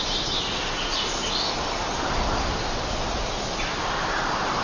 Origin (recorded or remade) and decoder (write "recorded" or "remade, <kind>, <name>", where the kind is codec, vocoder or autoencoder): recorded